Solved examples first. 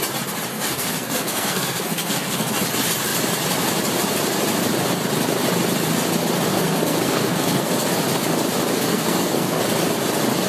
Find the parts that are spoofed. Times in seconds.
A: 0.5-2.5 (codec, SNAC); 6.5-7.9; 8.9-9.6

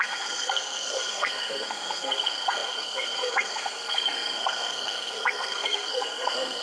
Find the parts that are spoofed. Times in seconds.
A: 0.0-6.6 (codec, SNAC)

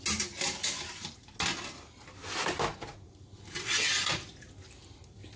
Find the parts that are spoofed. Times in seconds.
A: none

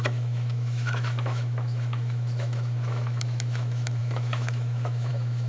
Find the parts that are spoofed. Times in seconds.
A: 0.0-5.5 (autoencoder, DAC-VAE)

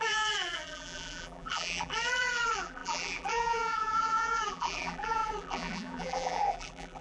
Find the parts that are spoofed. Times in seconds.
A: 0.0-7.0 (vocoder, BigVGAN v2)